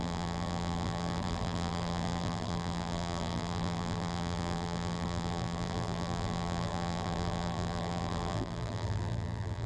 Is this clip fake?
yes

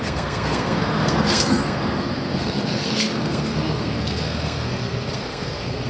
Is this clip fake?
yes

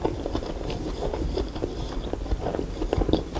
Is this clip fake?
no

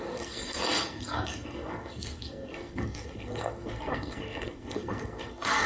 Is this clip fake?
yes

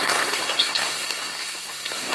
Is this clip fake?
yes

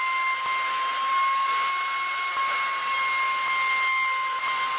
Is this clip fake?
no